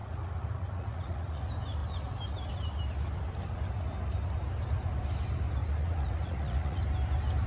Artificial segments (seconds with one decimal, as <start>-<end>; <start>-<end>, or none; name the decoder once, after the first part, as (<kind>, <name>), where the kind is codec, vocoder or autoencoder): 0.0-1.4 (vocoder, Vocos); 5.6-6.8